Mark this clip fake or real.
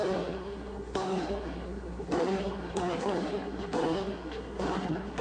fake